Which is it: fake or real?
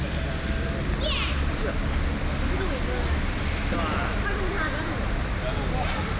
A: real